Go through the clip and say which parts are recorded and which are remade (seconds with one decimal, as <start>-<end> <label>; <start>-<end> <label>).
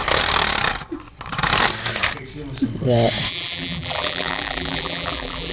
0.0-3.3 recorded; 3.3-5.5 remade